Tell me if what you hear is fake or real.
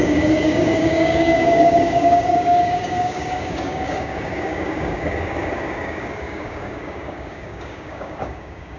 fake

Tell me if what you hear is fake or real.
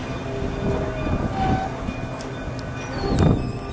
real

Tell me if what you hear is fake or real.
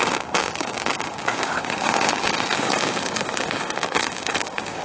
fake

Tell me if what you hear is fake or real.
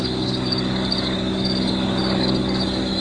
fake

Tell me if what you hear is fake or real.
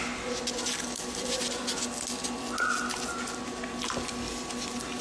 real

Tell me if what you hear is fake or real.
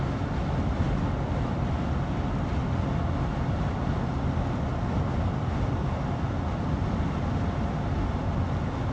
real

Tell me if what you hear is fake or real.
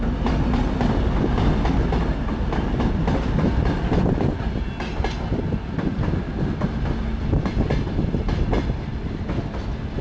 real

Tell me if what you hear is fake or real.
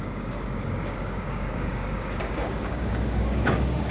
fake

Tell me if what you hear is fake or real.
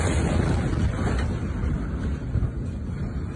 real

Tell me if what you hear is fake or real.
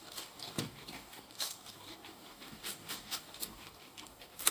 fake